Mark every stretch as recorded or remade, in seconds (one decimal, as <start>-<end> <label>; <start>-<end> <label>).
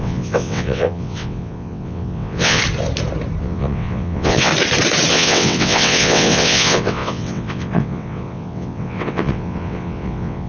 0.0-2.6 remade; 2.6-3.4 recorded; 3.4-4.5 remade; 4.5-5.1 recorded; 5.1-10.5 remade